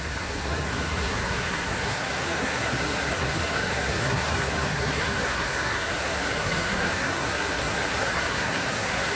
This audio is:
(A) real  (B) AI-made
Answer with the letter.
B